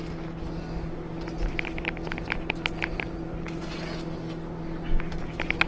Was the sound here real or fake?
real